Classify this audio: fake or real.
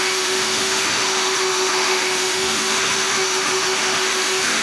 fake